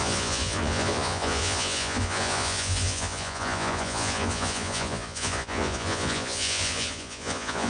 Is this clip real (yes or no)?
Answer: no